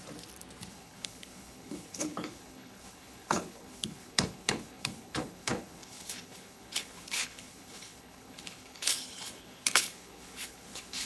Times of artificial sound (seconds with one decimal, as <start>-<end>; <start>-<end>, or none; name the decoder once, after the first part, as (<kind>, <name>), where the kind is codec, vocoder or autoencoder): 0.7-11.1 (codec, HILCodec)